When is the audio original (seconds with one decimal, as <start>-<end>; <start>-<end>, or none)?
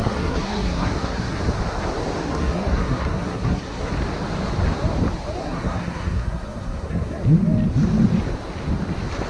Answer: 1.4-2.2; 3.9-5.4; 7.2-9.3